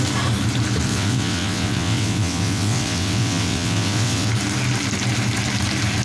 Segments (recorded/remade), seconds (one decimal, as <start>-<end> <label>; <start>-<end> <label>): 0.0-0.9 recorded; 0.9-4.3 remade; 4.3-6.0 recorded